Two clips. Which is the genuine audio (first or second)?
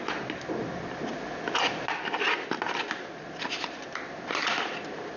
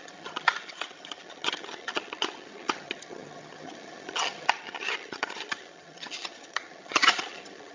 first